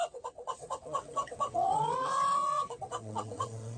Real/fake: fake